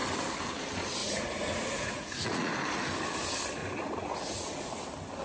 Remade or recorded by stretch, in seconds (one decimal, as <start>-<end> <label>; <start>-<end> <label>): 0.0-1.0 recorded; 1.0-2.5 remade; 2.5-3.6 recorded; 3.6-4.7 remade; 4.7-5.2 recorded